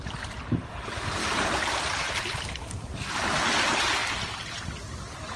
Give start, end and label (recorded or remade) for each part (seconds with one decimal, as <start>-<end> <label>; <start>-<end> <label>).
0.0-1.2 recorded; 1.2-2.2 remade; 2.2-5.4 recorded